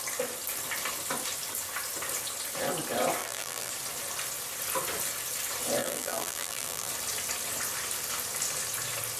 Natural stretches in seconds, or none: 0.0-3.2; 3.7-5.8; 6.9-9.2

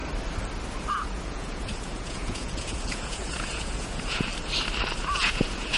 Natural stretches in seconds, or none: 0.0-0.9; 4.3-5.0

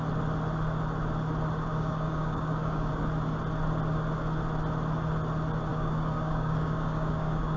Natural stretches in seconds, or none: 0.0-1.7; 2.9-5.7

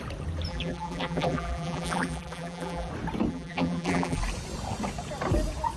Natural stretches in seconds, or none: 0.0-0.5; 2.9-3.3; 4.2-5.8

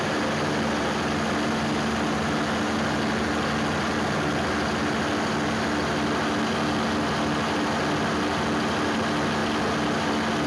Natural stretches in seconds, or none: 0.0-10.5